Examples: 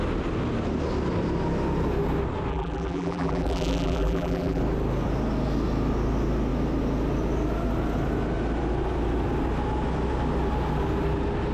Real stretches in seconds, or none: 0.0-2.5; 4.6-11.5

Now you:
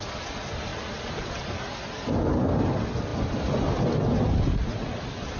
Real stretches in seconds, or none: 0.0-0.7; 1.2-3.1; 3.7-5.4

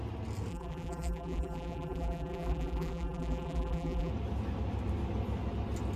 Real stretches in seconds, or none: 0.0-0.5; 4.1-6.0

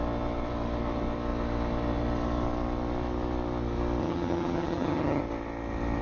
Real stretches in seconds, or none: 0.0-4.0; 5.2-6.0